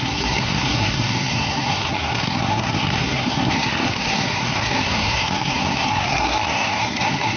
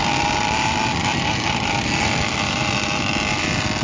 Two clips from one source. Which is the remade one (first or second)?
first